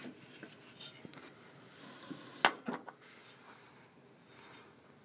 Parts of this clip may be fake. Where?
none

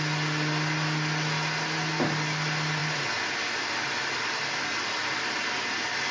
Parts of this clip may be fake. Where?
none

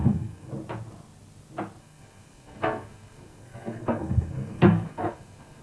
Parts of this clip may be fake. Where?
0.0-0.5; 1.8-5.6

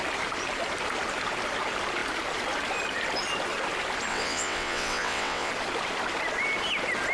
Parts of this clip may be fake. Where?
4.1-5.5

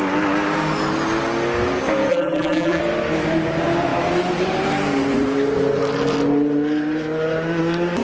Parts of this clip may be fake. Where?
2.1-2.8